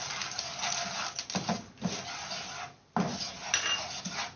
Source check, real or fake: real